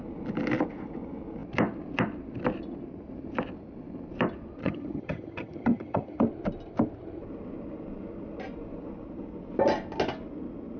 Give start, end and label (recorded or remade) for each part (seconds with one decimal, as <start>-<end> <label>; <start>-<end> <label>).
0.0-4.6 recorded; 4.6-6.2 remade; 6.2-10.8 recorded